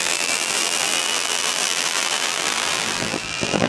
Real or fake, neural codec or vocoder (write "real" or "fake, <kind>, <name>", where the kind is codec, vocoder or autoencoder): fake, vocoder, BigVGAN v2